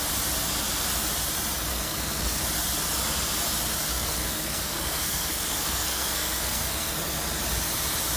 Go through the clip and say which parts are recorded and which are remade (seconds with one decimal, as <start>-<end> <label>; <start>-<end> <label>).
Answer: 0.0-1.7 recorded; 1.7-2.4 remade; 2.4-3.9 recorded; 3.9-6.9 remade; 6.9-8.2 recorded